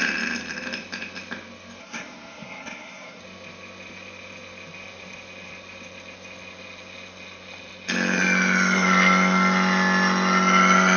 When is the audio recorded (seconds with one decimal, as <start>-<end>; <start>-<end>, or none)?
0.0-1.8; 3.2-11.0